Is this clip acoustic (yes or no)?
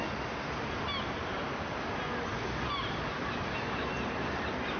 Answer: yes